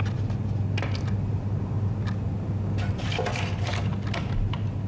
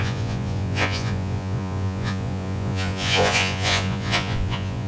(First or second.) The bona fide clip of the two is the first